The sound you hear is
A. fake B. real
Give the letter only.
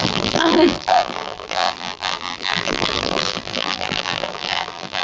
A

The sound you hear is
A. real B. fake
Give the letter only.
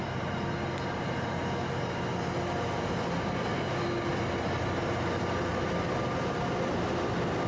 A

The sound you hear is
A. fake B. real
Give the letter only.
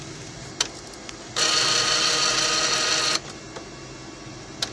B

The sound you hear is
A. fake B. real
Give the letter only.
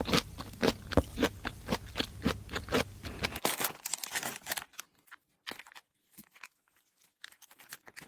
B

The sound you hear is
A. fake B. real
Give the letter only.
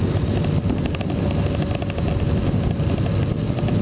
B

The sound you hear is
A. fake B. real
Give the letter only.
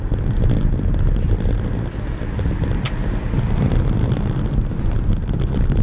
B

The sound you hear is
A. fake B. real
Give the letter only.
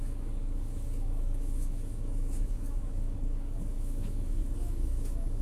A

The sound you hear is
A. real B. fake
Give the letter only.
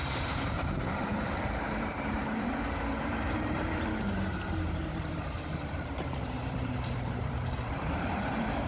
B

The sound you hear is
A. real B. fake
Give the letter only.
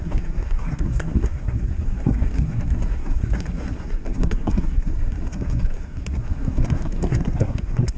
B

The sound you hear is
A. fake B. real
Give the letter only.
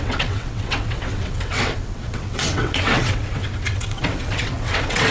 A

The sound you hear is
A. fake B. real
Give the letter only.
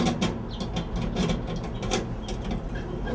B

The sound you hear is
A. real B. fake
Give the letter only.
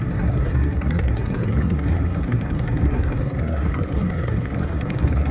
B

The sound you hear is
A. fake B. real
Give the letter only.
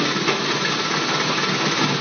B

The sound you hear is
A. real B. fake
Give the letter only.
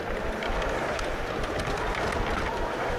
A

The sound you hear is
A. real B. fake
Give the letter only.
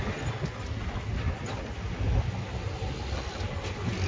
A